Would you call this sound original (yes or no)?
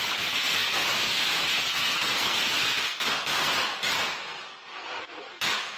no